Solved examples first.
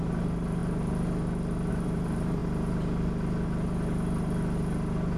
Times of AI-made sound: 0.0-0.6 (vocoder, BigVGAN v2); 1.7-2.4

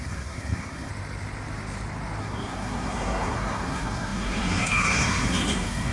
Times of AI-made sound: 0.0-0.9 (codec, SNAC); 2.2-5.9

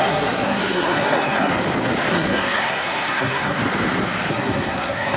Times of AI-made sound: 0.0-1.5 (codec, SNAC); 2.1-3.6; 4.3-5.2

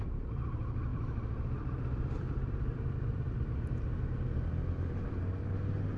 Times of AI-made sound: 0.9-3.3 (vocoder, BigVGAN v2)